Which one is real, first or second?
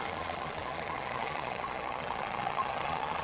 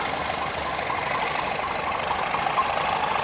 second